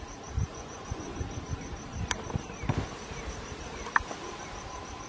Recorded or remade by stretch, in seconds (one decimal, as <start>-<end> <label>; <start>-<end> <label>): 0.0-0.5 recorded; 0.5-1.2 remade; 1.2-5.1 recorded